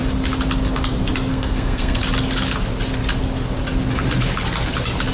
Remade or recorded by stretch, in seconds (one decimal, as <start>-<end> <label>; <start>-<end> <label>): 0.0-1.3 recorded; 1.3-2.0 remade; 2.0-5.1 recorded